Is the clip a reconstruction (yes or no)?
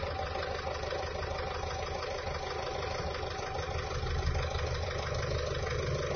no